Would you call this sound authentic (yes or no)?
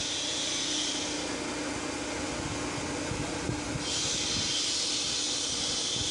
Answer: yes